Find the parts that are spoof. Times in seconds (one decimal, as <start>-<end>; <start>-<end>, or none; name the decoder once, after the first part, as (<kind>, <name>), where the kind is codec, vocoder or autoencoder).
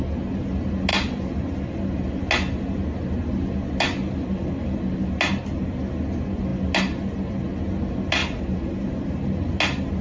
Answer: 0.9-1.7 (vocoder, BigVGAN v2); 8.2-9.1